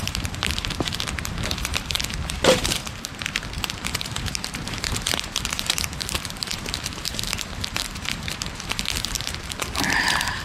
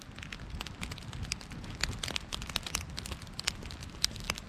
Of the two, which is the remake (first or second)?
first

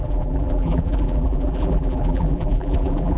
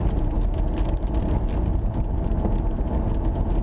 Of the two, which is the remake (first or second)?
first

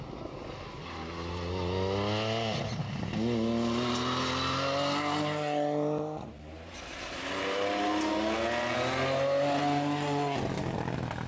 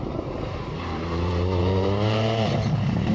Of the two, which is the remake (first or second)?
second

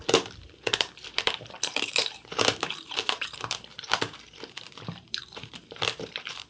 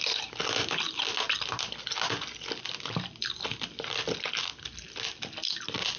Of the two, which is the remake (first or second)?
first